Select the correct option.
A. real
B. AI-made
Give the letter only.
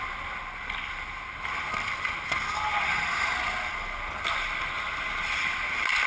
A